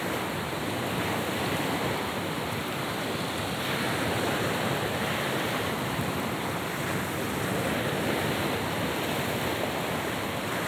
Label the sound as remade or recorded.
recorded